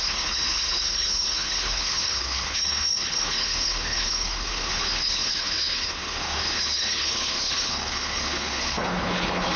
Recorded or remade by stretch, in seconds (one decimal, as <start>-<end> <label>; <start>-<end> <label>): 0.0-9.6 remade